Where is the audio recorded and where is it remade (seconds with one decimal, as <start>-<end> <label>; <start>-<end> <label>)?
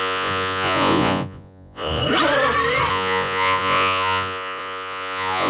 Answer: 0.0-2.0 remade; 2.0-2.9 recorded; 2.9-5.5 remade